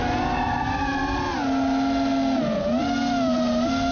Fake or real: real